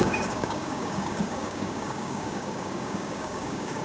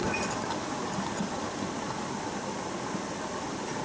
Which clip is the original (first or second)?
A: second